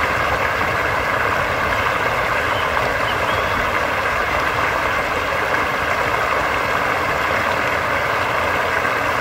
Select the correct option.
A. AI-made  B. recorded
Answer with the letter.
B